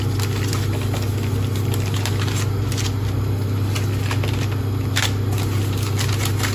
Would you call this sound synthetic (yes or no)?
no